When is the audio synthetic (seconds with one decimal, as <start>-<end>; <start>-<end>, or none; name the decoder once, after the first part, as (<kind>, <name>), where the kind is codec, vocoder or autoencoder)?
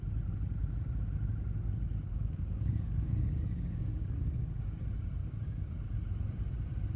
2.1-4.8 (codec, DAC); 5.2-5.7